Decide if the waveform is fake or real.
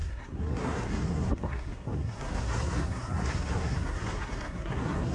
fake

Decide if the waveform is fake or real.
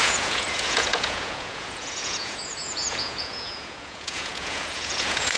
fake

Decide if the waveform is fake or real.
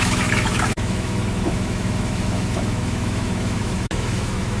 fake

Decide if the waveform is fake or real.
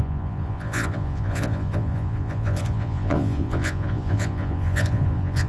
fake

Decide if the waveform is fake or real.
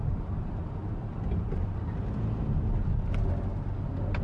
real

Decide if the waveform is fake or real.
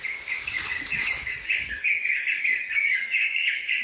fake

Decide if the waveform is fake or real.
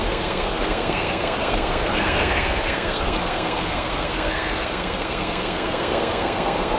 fake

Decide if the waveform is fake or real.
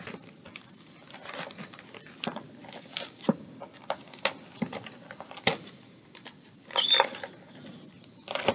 real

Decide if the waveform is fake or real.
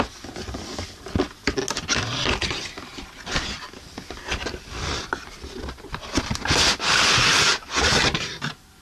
real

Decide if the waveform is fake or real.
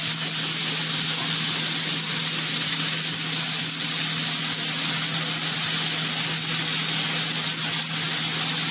real